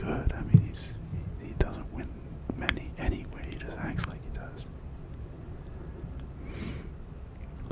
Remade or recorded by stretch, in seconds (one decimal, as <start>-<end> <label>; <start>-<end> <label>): 0.0-1.1 recorded; 1.1-2.0 remade; 2.0-7.7 recorded